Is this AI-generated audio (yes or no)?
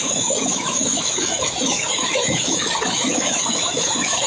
yes